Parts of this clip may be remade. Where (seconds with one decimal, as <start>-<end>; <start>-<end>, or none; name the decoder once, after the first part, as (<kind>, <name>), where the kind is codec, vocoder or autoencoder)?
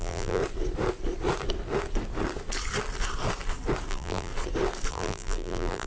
0.0-0.4 (vocoder, BigVGAN v2); 3.9-4.3; 4.9-5.9